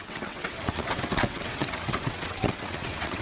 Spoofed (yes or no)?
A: yes